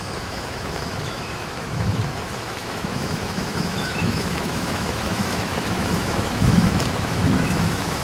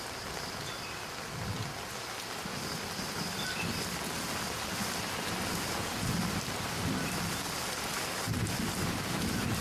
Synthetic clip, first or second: first